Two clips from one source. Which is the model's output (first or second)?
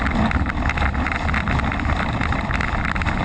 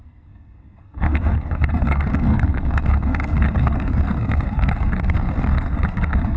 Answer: second